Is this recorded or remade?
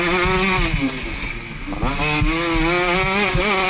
recorded